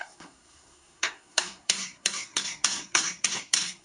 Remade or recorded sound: remade